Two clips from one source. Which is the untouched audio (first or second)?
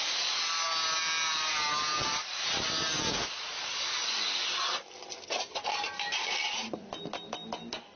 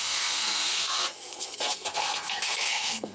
first